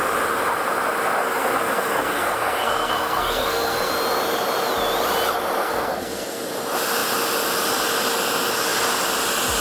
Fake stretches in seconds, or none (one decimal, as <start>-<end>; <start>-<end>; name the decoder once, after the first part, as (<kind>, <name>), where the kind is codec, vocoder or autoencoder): 1.2-3.9 (codec, SNAC); 5.6-6.4